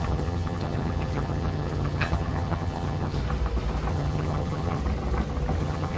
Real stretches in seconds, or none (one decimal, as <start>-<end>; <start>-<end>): 3.2-3.9; 4.8-5.6